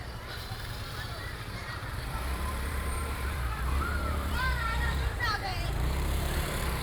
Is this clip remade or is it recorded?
remade